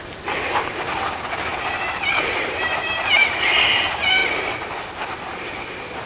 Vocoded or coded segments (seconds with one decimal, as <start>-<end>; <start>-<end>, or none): 1.5-3.6